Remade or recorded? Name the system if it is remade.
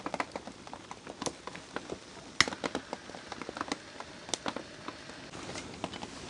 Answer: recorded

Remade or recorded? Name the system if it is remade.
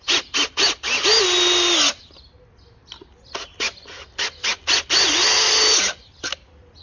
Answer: recorded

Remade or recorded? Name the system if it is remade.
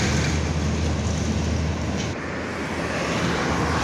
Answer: recorded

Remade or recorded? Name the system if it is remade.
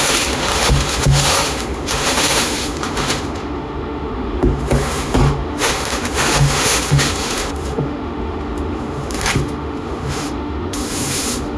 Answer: remade, autoencoder, DAC-VAE